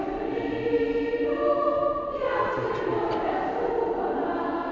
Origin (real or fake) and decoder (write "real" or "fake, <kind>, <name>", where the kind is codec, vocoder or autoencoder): real